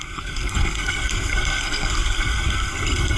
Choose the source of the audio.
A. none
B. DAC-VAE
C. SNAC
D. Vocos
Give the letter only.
C